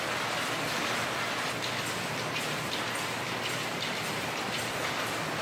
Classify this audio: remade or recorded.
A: recorded